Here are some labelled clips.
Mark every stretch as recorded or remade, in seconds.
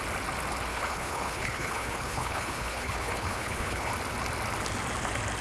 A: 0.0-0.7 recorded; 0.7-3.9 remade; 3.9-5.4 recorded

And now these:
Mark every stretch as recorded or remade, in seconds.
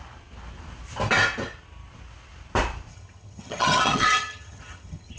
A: 0.0-2.9 recorded; 2.9-5.2 remade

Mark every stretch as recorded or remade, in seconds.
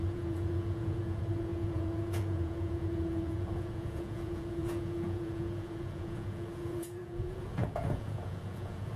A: 0.0-9.0 remade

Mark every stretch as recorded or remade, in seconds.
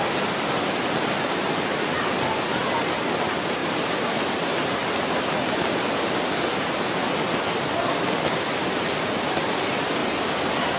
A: 0.0-10.8 recorded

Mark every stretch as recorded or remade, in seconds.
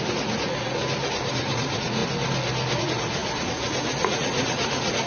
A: 0.0-0.8 remade; 0.8-1.3 recorded; 1.3-2.0 remade; 2.0-2.8 recorded; 2.8-5.1 remade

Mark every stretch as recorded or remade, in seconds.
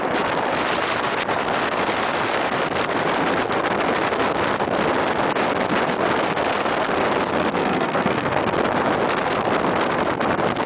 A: 0.0-7.6 recorded; 7.6-8.4 remade; 8.4-10.7 recorded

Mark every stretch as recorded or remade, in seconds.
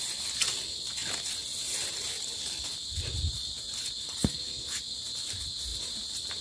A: 0.0-6.4 recorded